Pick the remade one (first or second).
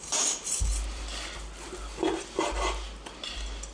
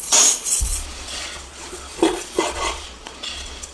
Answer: second